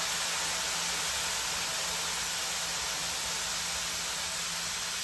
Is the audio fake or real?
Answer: real